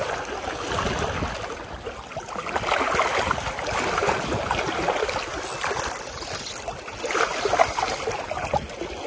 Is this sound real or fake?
real